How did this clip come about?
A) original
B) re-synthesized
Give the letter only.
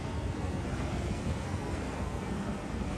B